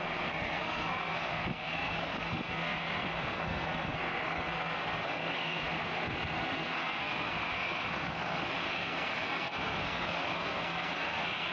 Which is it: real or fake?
fake